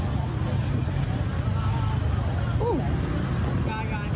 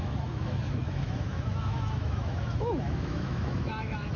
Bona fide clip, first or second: first